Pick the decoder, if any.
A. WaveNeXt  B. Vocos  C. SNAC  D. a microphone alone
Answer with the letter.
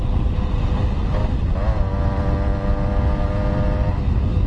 D